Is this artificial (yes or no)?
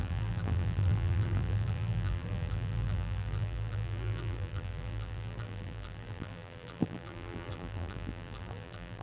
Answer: yes